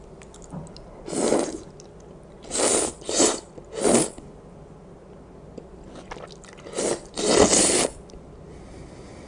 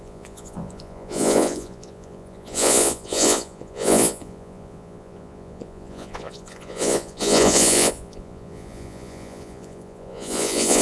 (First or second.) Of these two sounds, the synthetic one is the second